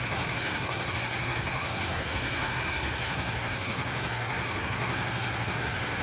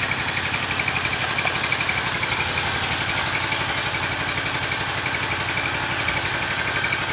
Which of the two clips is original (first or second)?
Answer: second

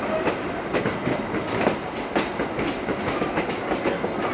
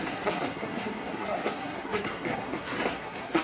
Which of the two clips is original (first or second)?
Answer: first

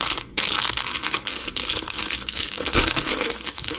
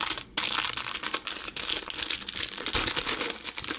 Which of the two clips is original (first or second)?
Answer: second